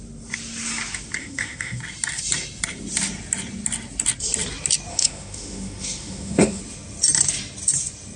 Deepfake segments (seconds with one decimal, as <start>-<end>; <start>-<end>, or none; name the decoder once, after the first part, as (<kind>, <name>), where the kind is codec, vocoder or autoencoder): 1.2-1.8 (autoencoder, DAC-VAE); 4.9-6.6